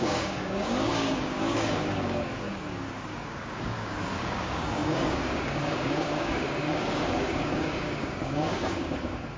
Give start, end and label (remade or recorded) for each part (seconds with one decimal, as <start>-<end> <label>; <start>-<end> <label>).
0.0-9.4 remade